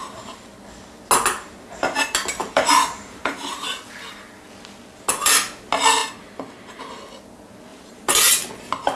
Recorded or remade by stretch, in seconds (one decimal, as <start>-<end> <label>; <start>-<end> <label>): 0.0-2.4 recorded; 2.4-4.5 remade; 4.5-7.7 recorded; 7.7-8.5 remade; 8.5-9.0 recorded